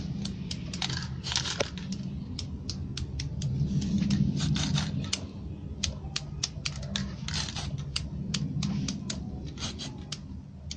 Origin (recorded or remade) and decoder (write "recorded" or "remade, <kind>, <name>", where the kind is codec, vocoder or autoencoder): recorded